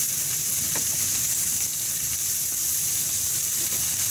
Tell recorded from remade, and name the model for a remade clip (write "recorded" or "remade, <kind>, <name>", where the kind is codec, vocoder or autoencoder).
remade, vocoder, BigVGAN v2